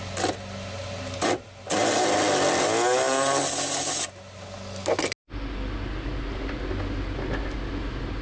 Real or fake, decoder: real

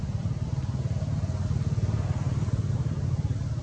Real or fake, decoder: real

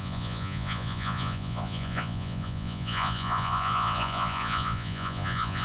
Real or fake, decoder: fake, vocoder, Vocos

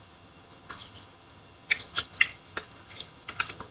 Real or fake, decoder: fake, vocoder, HiFi-GAN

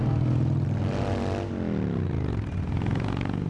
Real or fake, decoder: real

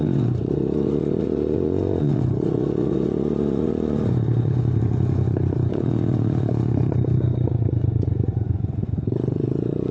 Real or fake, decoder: fake, vocoder, Vocos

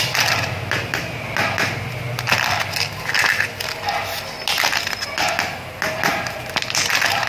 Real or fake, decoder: real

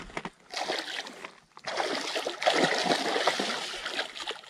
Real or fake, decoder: real